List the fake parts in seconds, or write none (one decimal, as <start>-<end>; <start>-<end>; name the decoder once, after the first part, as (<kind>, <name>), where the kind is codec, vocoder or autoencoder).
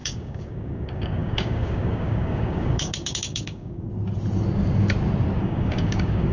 0.0-3.9 (codec, DAC); 5.4-6.3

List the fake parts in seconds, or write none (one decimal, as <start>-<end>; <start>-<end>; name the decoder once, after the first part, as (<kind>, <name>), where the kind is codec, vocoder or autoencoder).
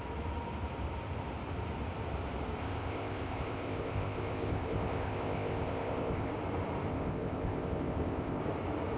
2.6-6.3 (codec, ZipCodec); 6.9-8.4